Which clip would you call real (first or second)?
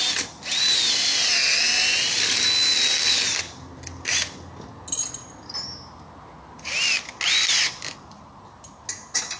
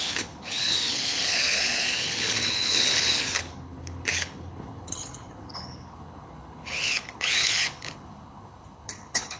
first